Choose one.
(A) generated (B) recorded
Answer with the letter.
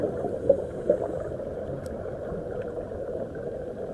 B